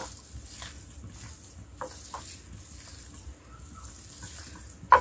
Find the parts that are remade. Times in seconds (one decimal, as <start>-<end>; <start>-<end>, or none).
none